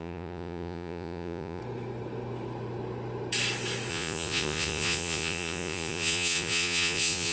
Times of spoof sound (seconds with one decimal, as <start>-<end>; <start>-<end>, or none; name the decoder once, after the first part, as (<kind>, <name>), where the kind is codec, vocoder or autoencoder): 0.0-1.6 (vocoder, Vocos); 3.9-7.3